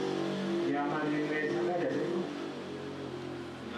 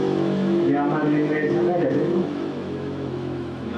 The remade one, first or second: second